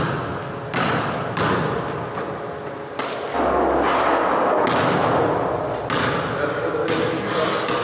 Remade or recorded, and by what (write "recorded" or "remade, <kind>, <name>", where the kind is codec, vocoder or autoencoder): recorded